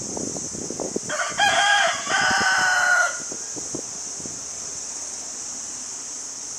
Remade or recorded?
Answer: recorded